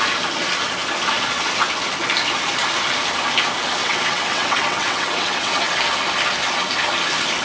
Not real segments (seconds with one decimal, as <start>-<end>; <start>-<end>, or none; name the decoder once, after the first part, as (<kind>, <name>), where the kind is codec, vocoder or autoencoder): 3.8-5.7 (vocoder, WaveNeXt)